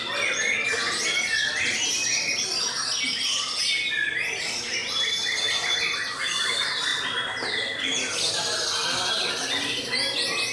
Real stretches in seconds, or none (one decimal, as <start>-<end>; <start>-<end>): 0.0-6.9; 8.4-10.5